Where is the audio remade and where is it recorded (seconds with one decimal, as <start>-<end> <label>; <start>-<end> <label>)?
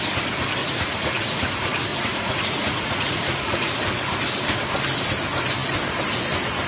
0.0-0.6 recorded; 0.6-1.5 remade; 1.5-1.9 recorded; 1.9-3.8 remade; 3.8-6.7 recorded